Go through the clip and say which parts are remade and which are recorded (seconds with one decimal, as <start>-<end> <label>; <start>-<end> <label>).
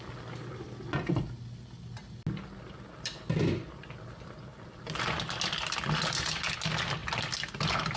0.0-8.0 recorded